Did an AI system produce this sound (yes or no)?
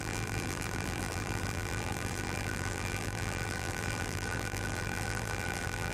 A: yes